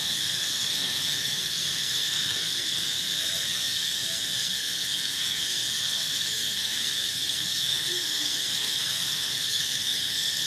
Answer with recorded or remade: remade